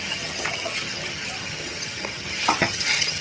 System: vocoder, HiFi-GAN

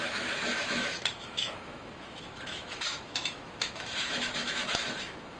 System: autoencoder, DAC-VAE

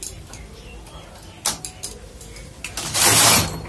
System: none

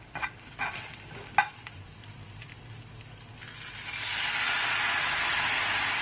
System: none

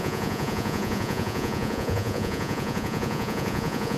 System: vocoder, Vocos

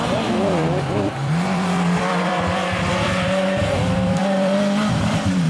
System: vocoder, BigVGAN v2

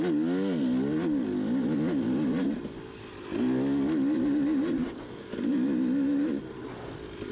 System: none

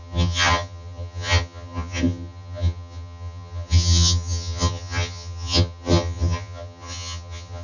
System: vocoder, HiFi-GAN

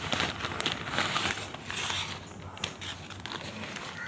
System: none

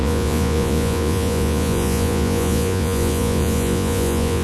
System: vocoder, Vocos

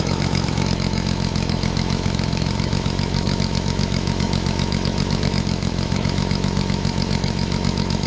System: autoencoder, DAC-VAE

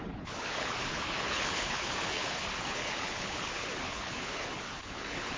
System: codec, HILCodec